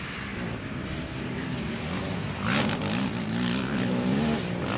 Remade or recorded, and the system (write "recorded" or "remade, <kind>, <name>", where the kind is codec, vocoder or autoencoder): recorded